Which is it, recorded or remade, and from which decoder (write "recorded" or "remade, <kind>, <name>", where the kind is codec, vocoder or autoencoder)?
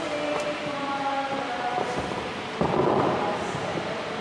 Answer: recorded